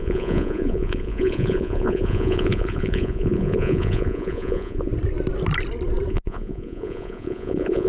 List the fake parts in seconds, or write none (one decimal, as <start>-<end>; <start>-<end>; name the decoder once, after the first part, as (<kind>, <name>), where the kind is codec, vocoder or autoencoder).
0.0-4.9 (vocoder, Vocos); 6.1-7.9